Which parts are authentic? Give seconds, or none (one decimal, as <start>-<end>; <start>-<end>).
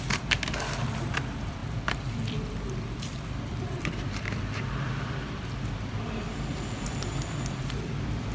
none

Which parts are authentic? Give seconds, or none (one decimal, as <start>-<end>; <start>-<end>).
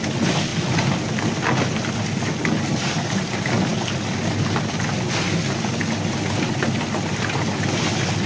0.0-8.3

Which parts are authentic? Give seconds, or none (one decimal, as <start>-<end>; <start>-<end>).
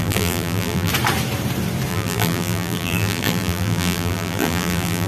0.9-1.9